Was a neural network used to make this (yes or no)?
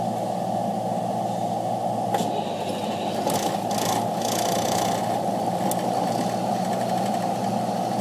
no